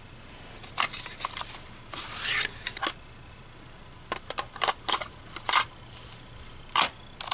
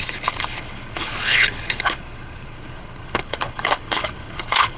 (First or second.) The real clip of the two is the first